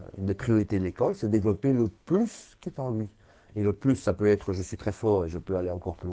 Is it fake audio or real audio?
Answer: fake